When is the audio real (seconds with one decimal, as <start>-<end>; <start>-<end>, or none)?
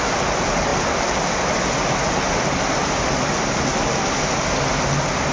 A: 0.0-5.3